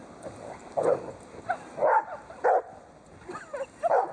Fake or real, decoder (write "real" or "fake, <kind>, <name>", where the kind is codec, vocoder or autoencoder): real